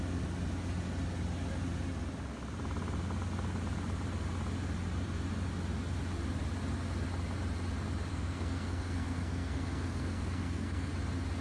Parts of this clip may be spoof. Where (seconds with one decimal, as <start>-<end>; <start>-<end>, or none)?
8.1-10.9